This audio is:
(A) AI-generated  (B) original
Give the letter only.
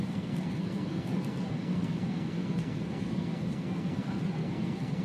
A